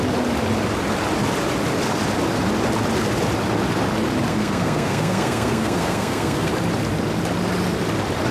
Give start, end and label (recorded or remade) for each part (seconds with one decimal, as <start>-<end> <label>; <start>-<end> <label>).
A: 0.0-4.3 recorded; 4.3-6.5 remade; 6.5-8.3 recorded